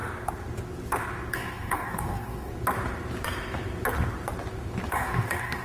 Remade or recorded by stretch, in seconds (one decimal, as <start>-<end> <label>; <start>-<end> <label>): 0.0-1.3 recorded; 1.3-2.5 remade; 2.5-4.9 recorded; 4.9-5.6 remade